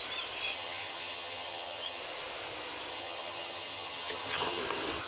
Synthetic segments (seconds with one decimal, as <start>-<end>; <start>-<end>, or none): 0.5-2.0; 2.9-4.6